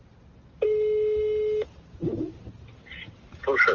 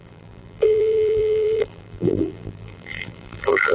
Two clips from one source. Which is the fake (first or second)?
second